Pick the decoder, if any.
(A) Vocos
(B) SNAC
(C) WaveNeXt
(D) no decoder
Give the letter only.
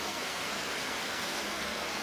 B